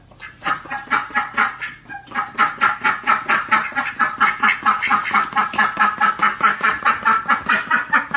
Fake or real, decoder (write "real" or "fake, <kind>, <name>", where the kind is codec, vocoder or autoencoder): real